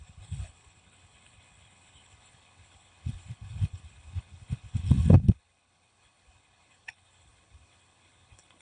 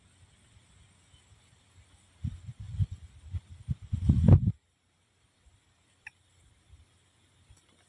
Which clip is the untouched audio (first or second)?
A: second